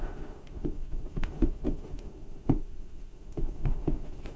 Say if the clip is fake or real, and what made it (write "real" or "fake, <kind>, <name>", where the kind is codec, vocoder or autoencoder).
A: fake, autoencoder, DAC-VAE